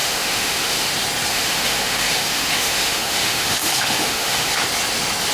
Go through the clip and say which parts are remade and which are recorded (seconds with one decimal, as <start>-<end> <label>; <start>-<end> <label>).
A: 0.0-0.9 remade; 0.9-1.3 recorded; 1.3-4.5 remade; 4.5-5.3 recorded